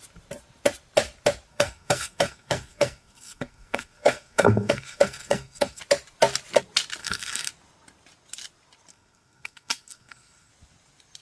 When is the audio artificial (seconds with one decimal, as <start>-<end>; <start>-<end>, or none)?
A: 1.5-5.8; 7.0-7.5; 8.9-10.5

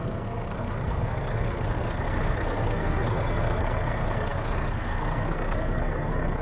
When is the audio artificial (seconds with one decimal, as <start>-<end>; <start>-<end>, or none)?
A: 0.0-6.4

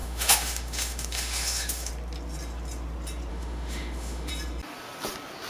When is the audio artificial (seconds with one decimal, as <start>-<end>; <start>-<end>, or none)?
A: 0.0-1.9; 3.3-4.3